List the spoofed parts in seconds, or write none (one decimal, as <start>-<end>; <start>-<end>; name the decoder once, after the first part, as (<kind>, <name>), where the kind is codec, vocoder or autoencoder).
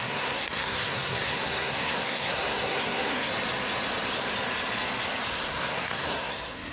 0.0-3.3 (codec, SNAC); 5.3-6.7